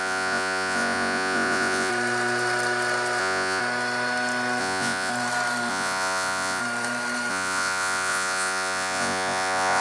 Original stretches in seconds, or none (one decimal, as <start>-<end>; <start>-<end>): 1.9-3.2; 3.6-4.6; 5.1-5.7; 6.6-7.3